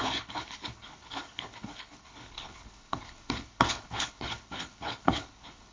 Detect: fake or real fake